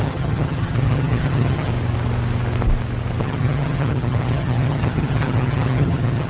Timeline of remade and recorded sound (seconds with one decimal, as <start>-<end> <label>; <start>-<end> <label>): 0.0-1.7 remade; 1.7-3.2 recorded; 3.2-6.3 remade